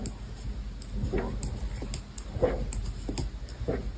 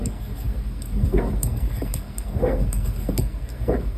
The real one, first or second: first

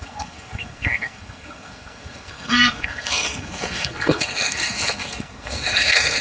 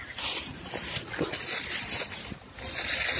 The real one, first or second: second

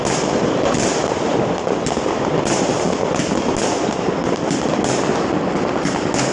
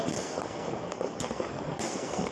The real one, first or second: first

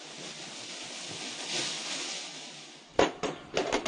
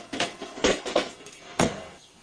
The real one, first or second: first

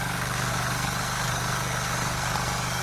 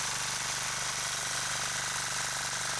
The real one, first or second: second